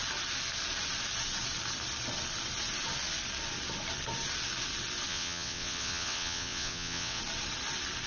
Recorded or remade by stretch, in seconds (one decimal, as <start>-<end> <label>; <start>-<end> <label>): 0.0-5.1 recorded; 5.1-7.2 remade; 7.2-8.1 recorded